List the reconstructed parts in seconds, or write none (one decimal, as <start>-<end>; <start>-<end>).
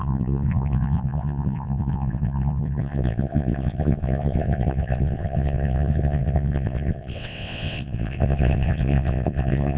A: 0.0-9.8